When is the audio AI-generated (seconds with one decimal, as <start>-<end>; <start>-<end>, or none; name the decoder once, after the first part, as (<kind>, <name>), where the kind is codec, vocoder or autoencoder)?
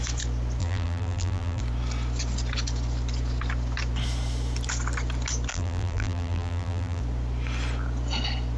0.6-1.6 (vocoder, BigVGAN v2); 5.5-7.0